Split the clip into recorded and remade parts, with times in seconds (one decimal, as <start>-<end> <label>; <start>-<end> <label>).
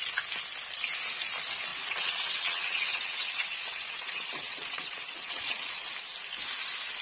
0.0-1.7 recorded; 1.7-5.9 remade; 5.9-7.0 recorded